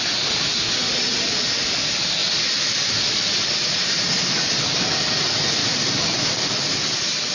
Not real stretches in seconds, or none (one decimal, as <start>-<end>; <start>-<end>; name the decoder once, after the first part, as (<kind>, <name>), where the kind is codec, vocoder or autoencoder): 2.2-2.7 (vocoder, BigVGAN v2); 5.6-7.3